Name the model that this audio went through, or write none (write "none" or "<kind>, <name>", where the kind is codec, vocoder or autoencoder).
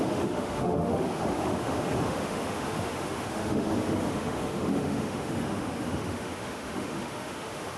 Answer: autoencoder, DAC-VAE